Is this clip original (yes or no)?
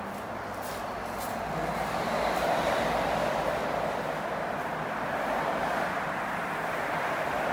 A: yes